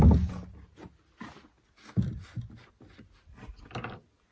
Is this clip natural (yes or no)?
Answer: yes